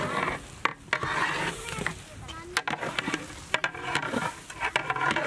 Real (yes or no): yes